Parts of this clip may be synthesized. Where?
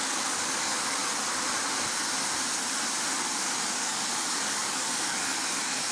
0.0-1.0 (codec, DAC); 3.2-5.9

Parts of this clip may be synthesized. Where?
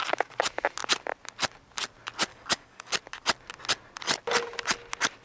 2.3-2.9 (codec, DAC)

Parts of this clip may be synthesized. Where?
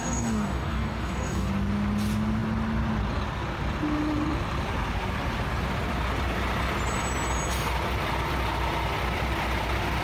0.0-1.5 (codec, DAC)